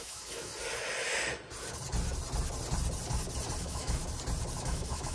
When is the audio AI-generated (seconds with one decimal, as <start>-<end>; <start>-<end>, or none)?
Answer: 0.0-0.5; 3.6-4.0; 4.6-5.1